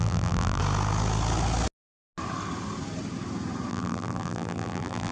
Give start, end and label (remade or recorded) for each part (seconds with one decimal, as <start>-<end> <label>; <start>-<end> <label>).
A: 0.0-0.6 remade; 0.6-3.7 recorded; 3.7-5.1 remade